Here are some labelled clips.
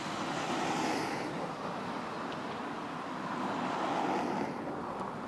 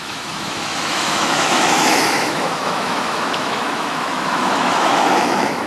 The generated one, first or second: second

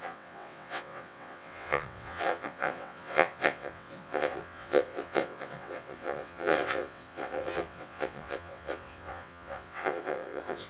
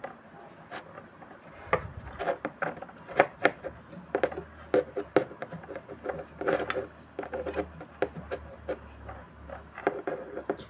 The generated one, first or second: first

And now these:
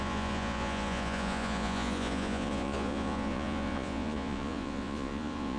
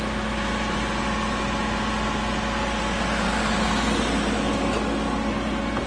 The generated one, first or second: first